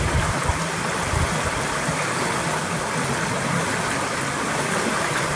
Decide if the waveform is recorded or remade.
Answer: recorded